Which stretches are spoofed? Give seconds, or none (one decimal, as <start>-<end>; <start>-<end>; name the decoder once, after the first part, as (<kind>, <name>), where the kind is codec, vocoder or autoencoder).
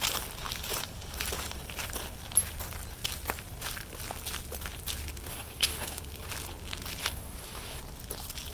5.3-6.0 (codec, DAC); 7.0-7.8